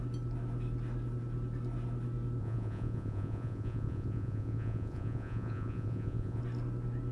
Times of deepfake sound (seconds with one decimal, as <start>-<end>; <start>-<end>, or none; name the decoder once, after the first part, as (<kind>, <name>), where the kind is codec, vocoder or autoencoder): 2.4-6.4 (vocoder, Vocos)